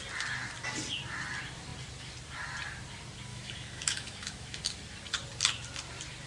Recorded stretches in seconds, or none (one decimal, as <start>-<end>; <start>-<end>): 0.0-3.3; 4.6-6.3